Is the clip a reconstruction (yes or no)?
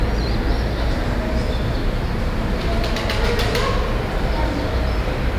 no